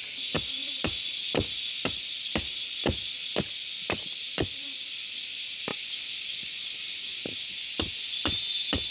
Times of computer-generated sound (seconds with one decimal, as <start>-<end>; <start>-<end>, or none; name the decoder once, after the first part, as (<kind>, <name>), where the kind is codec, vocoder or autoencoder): 0.0-5.7 (vocoder, BigVGAN v2); 7.9-8.9